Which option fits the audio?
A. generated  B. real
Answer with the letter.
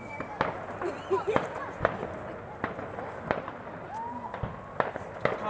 B